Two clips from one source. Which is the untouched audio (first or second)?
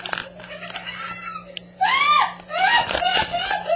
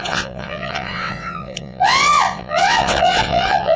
first